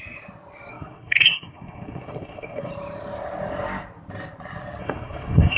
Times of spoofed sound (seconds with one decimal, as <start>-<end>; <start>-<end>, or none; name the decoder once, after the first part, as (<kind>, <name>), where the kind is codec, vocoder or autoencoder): 0.7-2.7 (codec, SNAC); 4.8-5.6